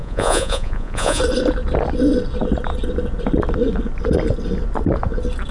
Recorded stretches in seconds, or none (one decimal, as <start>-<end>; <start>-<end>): 1.2-5.5